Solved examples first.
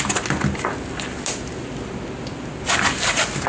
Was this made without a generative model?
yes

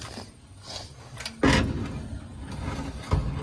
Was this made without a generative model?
yes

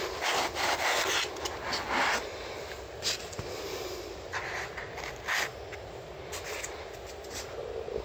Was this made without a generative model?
yes